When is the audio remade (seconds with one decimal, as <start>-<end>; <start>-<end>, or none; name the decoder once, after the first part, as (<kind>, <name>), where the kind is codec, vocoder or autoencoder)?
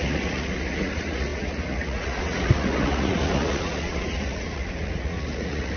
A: 0.0-5.8 (vocoder, Vocos)